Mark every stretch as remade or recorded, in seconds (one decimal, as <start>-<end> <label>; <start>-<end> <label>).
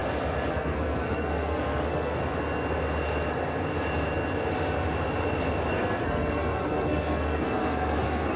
0.0-0.5 recorded; 0.5-2.2 remade; 2.2-5.7 recorded; 5.7-8.4 remade